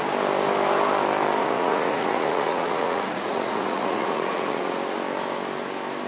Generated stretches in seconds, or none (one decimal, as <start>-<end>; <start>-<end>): 1.4-4.7